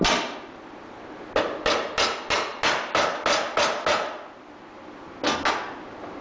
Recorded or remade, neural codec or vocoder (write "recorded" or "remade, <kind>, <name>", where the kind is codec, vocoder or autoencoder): recorded